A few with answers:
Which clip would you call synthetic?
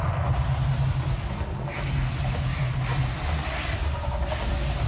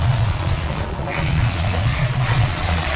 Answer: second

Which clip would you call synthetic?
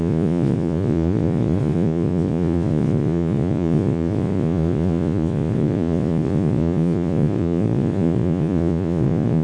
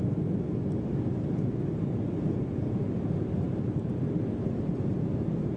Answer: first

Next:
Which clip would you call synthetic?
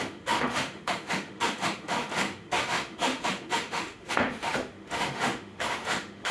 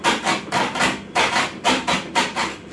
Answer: first